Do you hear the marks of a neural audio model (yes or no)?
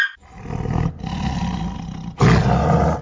no